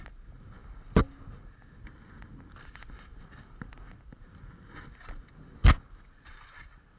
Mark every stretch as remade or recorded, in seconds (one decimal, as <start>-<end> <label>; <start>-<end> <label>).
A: 0.0-7.0 recorded